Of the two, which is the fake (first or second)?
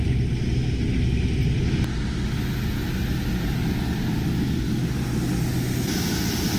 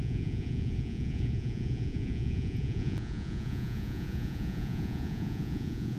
second